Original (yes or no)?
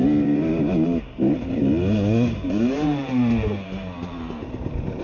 no